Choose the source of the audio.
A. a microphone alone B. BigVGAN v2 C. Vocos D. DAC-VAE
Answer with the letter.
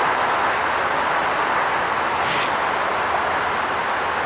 A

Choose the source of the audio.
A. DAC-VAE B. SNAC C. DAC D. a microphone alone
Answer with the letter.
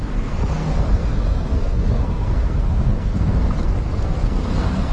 B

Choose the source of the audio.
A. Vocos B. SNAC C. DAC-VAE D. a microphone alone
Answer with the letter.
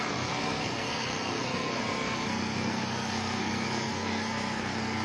B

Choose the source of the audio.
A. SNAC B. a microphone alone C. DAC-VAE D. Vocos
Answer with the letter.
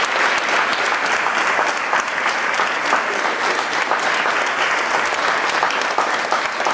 B